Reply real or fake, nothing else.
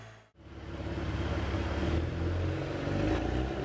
real